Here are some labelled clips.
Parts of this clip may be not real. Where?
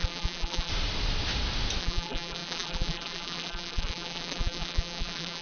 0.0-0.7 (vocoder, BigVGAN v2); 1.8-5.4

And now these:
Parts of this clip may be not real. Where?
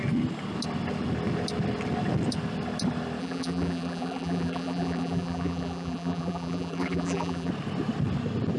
3.2-7.5 (vocoder, BigVGAN v2)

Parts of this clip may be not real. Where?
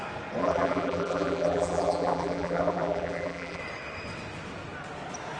0.4-3.6 (vocoder, BigVGAN v2)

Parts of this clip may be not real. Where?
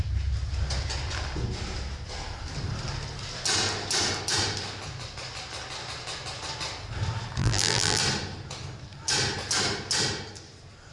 7.4-8.0 (vocoder, BigVGAN v2)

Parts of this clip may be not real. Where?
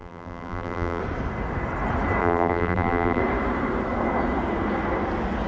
0.0-1.0 (vocoder, BigVGAN v2); 2.2-3.2